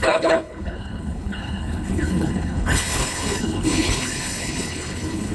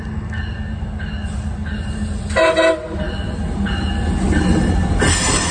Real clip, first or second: second